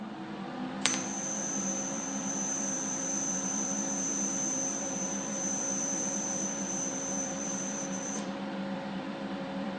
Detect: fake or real fake